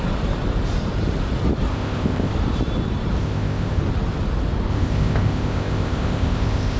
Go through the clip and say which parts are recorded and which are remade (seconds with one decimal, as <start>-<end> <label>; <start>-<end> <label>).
0.0-1.7 recorded; 1.7-2.3 remade; 2.3-3.2 recorded; 3.2-3.8 remade; 3.8-4.7 recorded; 4.7-6.8 remade